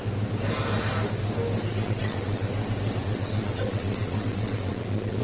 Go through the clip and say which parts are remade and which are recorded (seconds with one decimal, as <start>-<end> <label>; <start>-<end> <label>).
0.0-1.7 recorded; 1.7-2.5 remade; 2.5-3.0 recorded; 3.0-5.2 remade